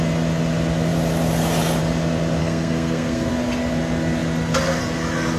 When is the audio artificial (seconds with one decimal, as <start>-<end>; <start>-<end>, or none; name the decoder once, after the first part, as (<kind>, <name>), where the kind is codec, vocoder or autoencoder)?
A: 2.4-3.3 (codec, SNAC)

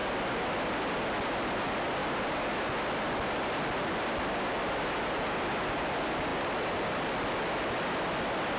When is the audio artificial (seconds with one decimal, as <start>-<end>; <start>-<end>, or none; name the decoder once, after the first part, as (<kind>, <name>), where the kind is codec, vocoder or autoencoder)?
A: none

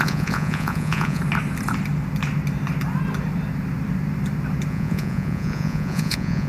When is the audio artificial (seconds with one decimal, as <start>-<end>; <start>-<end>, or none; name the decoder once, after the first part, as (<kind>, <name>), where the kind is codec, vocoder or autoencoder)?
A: 0.0-1.2 (vocoder, Vocos); 4.7-6.5

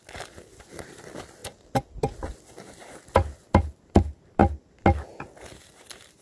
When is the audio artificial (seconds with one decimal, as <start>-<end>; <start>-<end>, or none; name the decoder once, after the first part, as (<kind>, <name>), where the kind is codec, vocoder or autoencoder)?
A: none

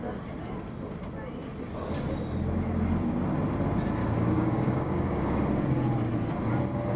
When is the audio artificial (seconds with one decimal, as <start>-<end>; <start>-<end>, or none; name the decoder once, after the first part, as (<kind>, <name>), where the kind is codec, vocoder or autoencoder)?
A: 4.0-5.4 (codec, DAC)

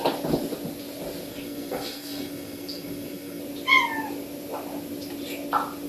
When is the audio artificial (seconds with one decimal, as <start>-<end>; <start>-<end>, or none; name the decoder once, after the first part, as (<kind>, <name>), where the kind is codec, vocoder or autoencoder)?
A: 1.3-3.4 (codec, SNAC)